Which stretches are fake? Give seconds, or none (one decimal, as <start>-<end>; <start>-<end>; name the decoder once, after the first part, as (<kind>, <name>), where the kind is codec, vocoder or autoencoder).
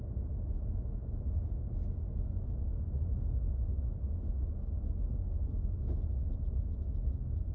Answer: none